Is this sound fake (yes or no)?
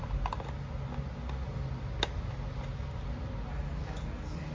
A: no